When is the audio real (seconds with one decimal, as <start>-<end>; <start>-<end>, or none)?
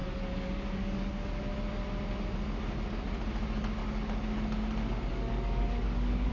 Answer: 1.5-3.8; 4.6-5.1